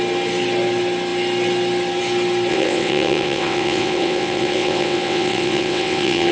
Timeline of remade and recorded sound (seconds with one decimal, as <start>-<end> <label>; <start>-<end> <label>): 0.0-2.5 recorded; 2.5-6.3 remade